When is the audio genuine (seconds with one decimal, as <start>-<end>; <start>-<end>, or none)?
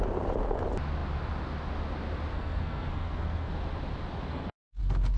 0.0-2.3; 3.5-4.3